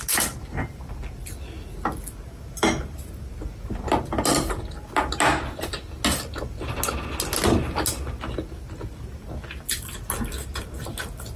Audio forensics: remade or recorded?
recorded